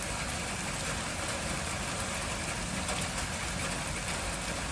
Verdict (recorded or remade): recorded